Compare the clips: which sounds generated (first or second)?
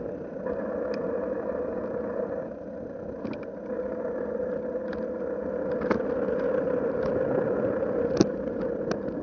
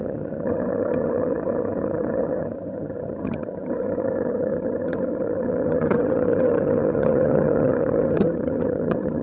second